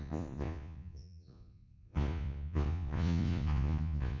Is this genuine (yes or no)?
no